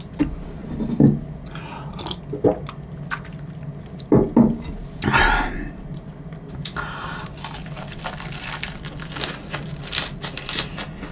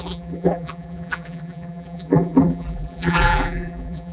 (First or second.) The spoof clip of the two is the second